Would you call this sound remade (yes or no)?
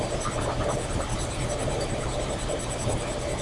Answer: yes